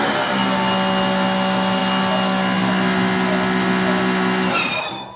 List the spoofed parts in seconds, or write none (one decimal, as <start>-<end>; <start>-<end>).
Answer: none